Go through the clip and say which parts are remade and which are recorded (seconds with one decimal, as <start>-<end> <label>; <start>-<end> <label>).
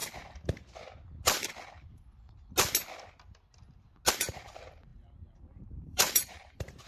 0.0-4.1 recorded; 4.1-6.9 remade